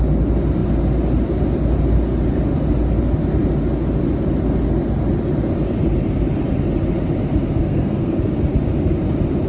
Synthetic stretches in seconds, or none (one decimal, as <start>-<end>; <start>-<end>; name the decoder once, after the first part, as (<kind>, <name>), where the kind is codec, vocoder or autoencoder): 7.6-8.1 (codec, SNAC)